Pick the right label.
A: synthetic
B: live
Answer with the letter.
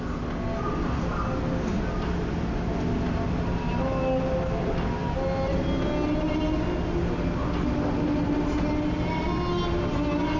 B